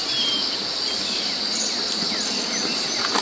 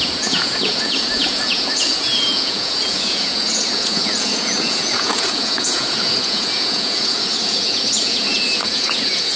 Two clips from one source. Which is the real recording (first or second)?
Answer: first